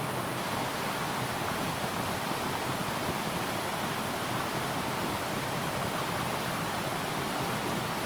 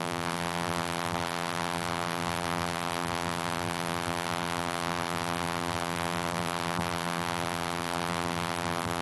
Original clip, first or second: first